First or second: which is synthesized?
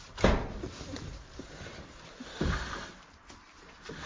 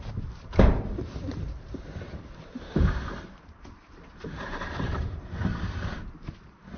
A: second